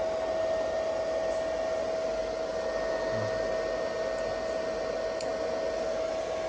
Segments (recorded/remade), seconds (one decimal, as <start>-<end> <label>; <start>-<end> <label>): 0.0-6.5 recorded